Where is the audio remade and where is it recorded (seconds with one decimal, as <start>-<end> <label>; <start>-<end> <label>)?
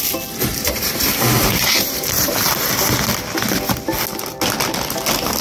0.0-0.5 recorded; 0.5-2.5 remade; 2.5-5.4 recorded